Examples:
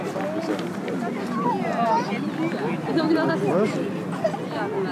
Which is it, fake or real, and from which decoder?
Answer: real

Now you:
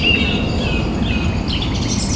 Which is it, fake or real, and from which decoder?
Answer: real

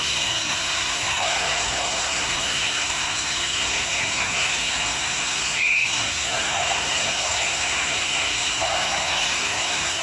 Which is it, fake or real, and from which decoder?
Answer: fake, codec, SNAC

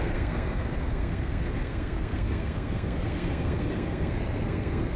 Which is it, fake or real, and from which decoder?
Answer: fake, codec, SNAC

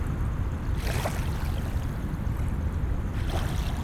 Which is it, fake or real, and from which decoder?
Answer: real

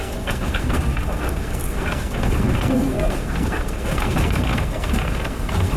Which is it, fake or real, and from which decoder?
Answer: fake, codec, SNAC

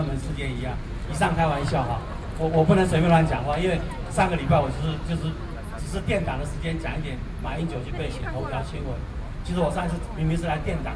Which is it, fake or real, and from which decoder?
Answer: real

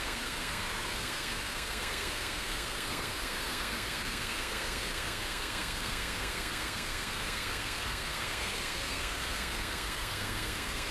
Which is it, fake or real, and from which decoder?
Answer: fake, codec, SNAC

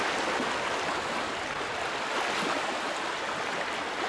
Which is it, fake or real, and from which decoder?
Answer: real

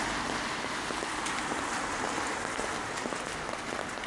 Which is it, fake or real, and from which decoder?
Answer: real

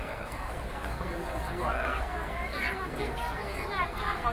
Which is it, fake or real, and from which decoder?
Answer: fake, codec, SNAC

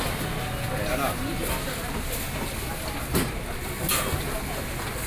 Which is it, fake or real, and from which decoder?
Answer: real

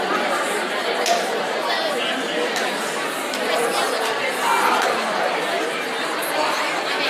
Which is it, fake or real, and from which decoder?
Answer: real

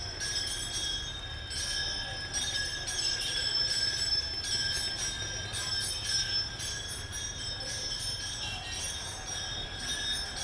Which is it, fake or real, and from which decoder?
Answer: real